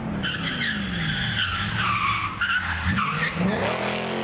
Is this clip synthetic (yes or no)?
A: no